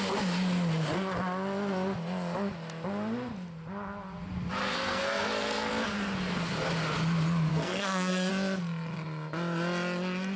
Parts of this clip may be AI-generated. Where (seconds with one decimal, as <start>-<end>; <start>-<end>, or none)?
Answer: 4.6-5.7; 7.5-8.3

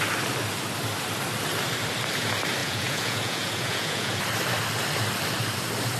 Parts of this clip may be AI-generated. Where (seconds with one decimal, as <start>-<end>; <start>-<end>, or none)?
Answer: 2.6-4.2